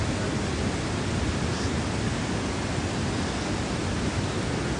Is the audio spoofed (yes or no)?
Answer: no